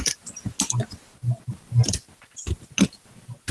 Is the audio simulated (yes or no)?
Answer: no